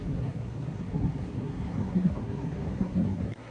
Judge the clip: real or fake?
fake